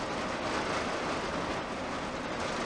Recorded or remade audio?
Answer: recorded